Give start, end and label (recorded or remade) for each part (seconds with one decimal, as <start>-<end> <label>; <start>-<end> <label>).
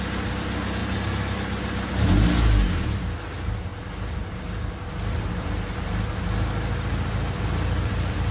0.0-3.7 recorded; 3.7-4.3 remade; 4.3-8.3 recorded